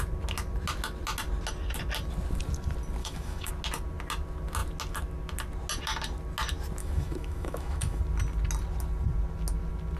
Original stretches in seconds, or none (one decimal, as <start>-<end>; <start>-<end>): 0.0-3.0; 3.5-6.8; 8.0-10.0